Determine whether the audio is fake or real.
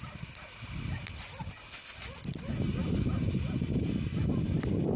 real